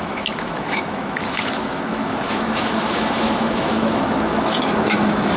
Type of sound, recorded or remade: remade